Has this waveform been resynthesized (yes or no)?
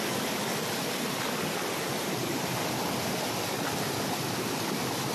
no